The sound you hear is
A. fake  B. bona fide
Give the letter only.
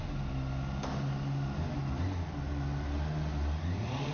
B